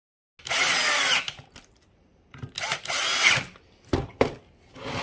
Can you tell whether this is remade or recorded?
recorded